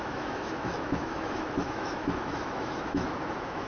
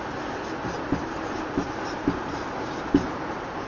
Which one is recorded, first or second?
second